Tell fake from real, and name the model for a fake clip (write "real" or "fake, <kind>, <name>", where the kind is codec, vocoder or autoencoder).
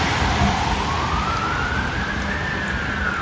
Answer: real